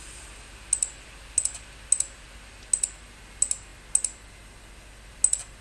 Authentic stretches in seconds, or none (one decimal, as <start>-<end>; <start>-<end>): 0.0-5.6

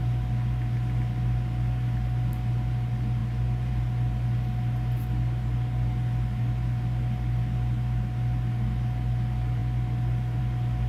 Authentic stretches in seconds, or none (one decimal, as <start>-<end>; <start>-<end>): 0.0-10.9

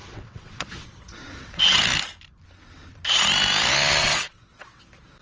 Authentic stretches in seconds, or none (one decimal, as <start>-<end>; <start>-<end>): 1.8-4.0; 4.8-5.2